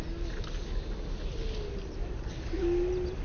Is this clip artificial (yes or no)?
no